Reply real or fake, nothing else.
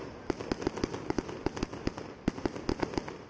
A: real